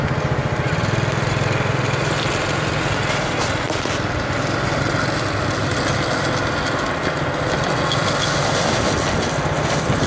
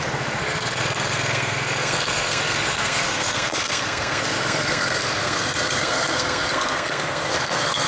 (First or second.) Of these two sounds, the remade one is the second